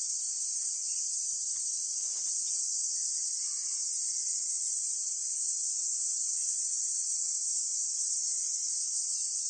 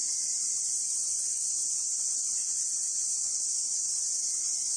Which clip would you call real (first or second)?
second